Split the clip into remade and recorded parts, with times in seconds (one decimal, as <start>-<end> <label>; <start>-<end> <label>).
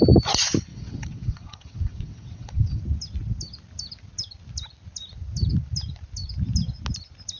0.0-0.7 recorded; 0.7-2.8 remade; 2.8-7.4 recorded